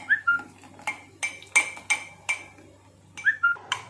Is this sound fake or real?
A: real